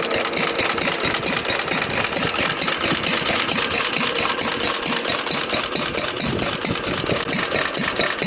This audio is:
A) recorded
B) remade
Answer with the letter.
A